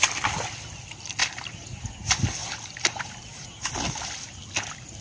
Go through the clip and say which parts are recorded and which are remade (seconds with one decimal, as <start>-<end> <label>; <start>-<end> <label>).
0.0-1.2 recorded; 1.2-1.9 remade; 1.9-2.4 recorded; 2.4-3.7 remade; 3.7-5.0 recorded